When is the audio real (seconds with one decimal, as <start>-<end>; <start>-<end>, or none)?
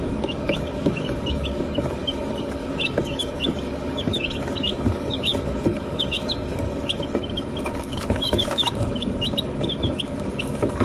none